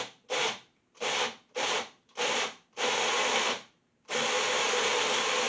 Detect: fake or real fake